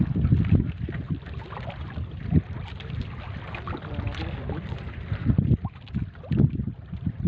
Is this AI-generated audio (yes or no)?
no